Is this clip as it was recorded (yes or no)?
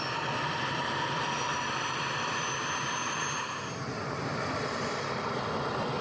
no